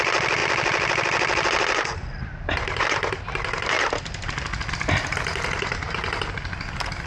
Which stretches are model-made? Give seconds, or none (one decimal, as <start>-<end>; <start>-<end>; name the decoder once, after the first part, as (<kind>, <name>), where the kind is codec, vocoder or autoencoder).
none